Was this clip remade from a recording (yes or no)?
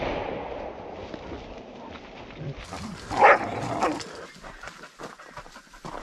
no